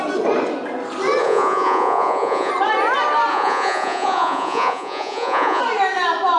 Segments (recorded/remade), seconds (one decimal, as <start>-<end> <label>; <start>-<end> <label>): 0.0-1.2 recorded; 1.2-2.5 remade; 2.5-3.3 recorded; 3.3-5.6 remade; 5.6-6.4 recorded